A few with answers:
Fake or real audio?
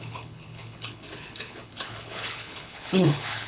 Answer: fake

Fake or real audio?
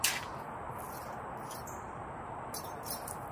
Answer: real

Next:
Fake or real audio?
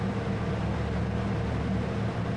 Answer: real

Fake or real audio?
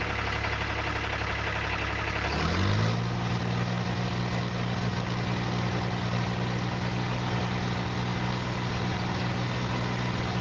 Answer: real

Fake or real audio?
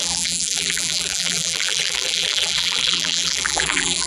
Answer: fake